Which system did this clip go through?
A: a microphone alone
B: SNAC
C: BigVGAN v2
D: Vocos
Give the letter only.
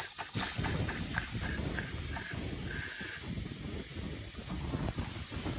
A